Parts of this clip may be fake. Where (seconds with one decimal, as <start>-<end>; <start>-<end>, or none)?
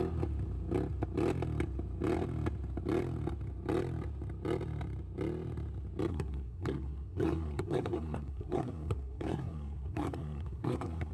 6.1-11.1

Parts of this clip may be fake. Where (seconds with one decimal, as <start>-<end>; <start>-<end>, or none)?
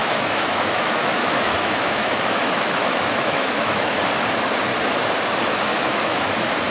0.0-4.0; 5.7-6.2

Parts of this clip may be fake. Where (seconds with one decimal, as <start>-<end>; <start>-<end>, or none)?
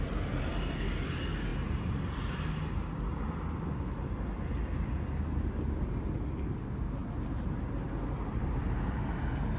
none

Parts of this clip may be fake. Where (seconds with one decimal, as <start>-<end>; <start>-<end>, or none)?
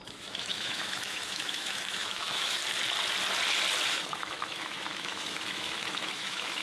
0.0-2.6; 3.9-6.6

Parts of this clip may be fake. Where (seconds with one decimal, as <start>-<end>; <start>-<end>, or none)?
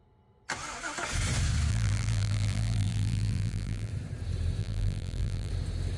1.7-3.9; 4.6-5.5